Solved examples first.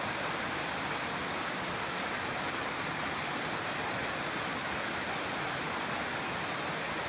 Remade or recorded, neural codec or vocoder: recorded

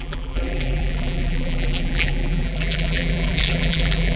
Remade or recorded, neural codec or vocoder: remade, vocoder, BigVGAN v2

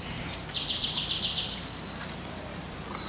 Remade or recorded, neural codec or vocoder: recorded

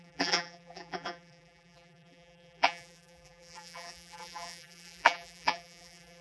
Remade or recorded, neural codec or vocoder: remade, vocoder, BigVGAN v2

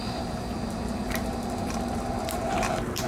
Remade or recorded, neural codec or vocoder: remade, vocoder, BigVGAN v2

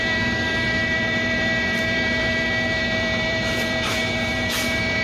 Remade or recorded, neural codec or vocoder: remade, vocoder, BigVGAN v2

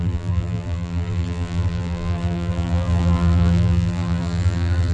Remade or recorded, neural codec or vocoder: remade, vocoder, BigVGAN v2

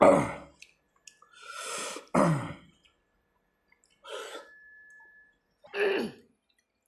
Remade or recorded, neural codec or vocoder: recorded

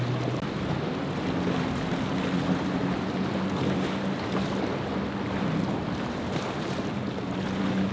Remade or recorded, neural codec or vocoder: recorded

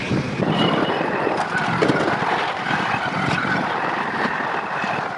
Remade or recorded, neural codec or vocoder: remade, vocoder, BigVGAN v2